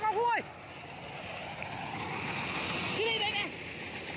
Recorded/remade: recorded